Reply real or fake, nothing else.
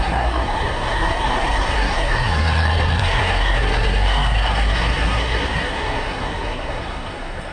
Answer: fake